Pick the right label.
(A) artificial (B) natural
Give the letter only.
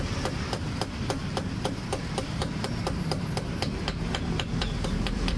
A